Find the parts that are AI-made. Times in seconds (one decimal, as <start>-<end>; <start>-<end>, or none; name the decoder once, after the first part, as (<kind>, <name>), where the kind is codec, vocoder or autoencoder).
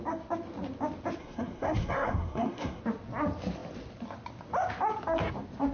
1.2-2.8 (codec, SNAC)